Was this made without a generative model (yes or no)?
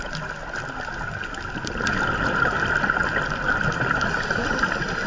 yes